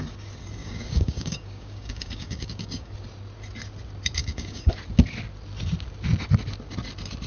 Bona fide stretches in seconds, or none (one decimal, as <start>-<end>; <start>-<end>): 0.0-0.6; 2.9-4.2; 4.7-7.3